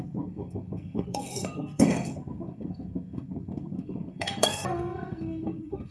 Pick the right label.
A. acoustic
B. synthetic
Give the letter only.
B